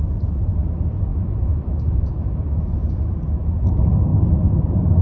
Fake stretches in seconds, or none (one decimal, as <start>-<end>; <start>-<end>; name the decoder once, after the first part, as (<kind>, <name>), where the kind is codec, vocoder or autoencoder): 1.1-3.1 (autoencoder, DAC-VAE)